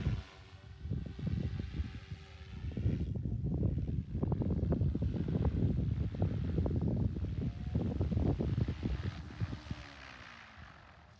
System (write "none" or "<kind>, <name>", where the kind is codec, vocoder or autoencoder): none